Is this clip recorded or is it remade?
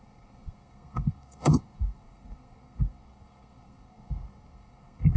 remade